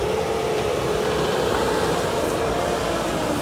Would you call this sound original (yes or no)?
yes